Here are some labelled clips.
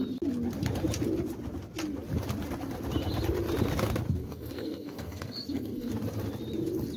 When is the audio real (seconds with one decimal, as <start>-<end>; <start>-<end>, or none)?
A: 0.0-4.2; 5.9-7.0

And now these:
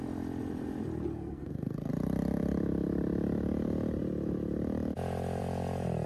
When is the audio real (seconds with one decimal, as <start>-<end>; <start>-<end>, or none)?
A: 0.0-1.1; 1.9-6.1

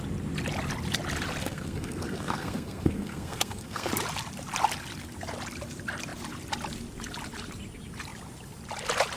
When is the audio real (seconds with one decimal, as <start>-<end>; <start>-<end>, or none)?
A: 0.0-1.4; 3.9-9.2